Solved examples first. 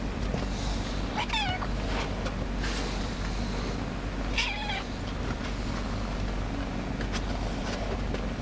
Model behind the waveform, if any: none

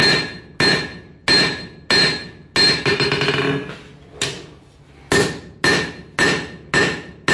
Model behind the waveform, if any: none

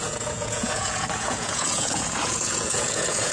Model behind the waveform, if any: vocoder, Vocos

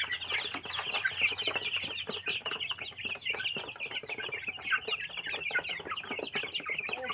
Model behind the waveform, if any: none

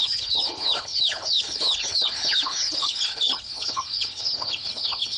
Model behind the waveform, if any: codec, HILCodec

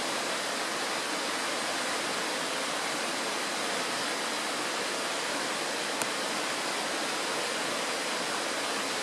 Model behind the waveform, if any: none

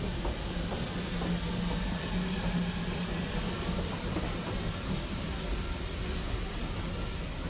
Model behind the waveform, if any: none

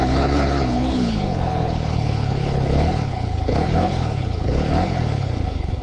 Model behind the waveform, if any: codec, HILCodec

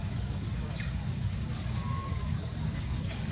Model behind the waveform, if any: codec, DAC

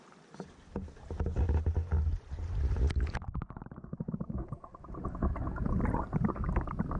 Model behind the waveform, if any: none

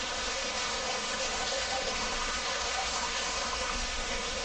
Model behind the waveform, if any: autoencoder, DAC-VAE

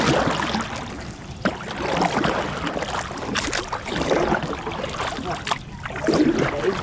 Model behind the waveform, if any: none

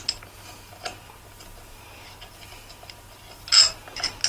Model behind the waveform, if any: none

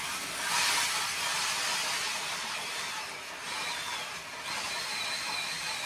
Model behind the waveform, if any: none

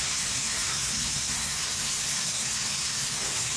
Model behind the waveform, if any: codec, SNAC